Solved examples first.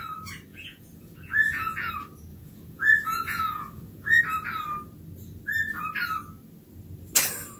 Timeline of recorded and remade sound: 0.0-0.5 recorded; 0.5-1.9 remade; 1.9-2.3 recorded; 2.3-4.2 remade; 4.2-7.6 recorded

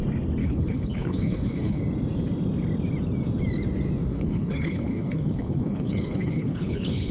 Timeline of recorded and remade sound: 0.0-0.4 recorded; 0.4-1.8 remade; 1.8-4.1 recorded; 4.1-7.1 remade

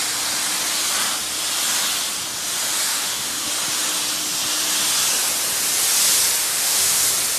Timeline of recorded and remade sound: 0.0-2.9 recorded; 2.9-3.5 remade; 3.5-6.4 recorded; 6.4-7.0 remade; 7.0-7.4 recorded

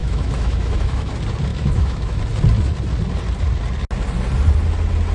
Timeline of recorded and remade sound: 0.0-1.1 remade; 1.1-1.5 recorded; 1.5-2.2 remade; 2.2-5.1 recorded

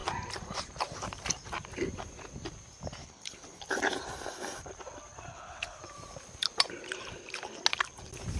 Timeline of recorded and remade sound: 0.0-3.0 recorded; 3.0-3.6 remade; 3.6-5.3 recorded; 5.3-5.8 remade; 5.8-8.4 recorded

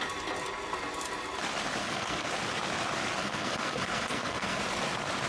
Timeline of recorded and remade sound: 0.0-1.8 recorded; 1.8-2.3 remade; 2.3-3.2 recorded; 3.2-4.6 remade; 4.6-5.3 recorded

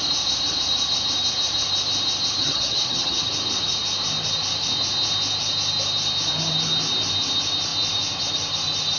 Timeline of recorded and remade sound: 0.0-2.4 recorded; 2.4-3.3 remade; 3.3-9.0 recorded

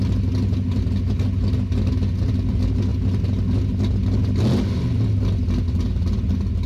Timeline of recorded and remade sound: 0.0-6.7 recorded